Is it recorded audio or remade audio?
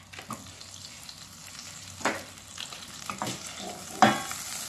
recorded